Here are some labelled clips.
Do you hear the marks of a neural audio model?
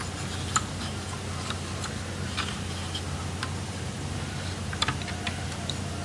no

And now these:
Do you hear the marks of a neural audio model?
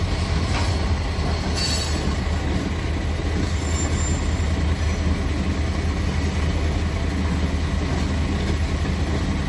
no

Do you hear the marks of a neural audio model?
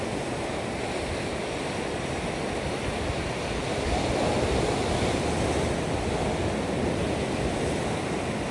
no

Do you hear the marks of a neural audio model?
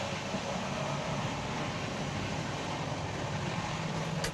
no